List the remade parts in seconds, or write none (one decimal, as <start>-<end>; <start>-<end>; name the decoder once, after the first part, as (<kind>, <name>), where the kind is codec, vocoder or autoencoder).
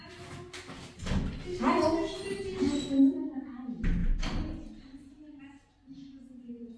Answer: none